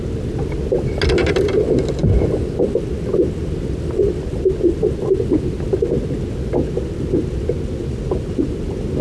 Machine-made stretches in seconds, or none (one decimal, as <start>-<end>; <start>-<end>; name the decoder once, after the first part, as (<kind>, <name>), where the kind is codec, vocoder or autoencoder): none